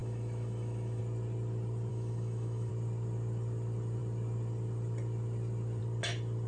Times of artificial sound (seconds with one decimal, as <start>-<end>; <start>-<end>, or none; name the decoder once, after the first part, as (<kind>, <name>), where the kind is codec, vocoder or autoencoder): 0.0-1.0 (autoencoder, DAC-VAE); 1.9-2.7